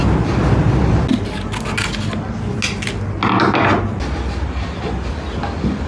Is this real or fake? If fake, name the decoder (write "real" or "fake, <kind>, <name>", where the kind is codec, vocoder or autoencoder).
real